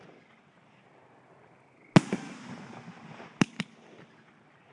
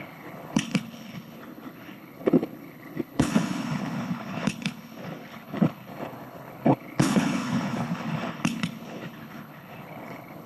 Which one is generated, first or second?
second